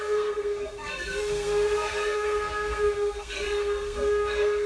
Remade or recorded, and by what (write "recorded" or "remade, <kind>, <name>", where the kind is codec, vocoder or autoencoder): remade, codec, SNAC